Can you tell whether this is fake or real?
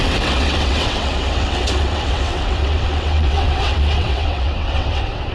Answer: fake